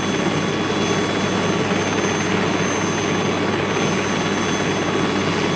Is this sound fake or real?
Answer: real